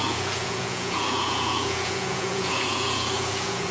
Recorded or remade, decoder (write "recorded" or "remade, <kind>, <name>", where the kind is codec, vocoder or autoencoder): remade, vocoder, Vocos